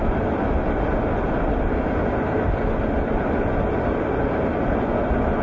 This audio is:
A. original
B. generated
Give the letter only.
A